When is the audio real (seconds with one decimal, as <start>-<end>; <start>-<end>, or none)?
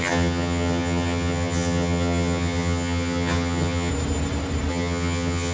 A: 3.9-4.7